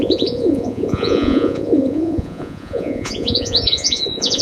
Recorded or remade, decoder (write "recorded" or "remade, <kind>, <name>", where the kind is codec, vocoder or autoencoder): remade, vocoder, Vocos